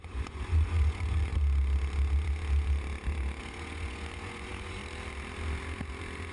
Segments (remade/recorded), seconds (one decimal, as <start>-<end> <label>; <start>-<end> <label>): 0.0-1.3 remade; 1.3-3.4 recorded; 3.4-4.8 remade; 4.8-6.3 recorded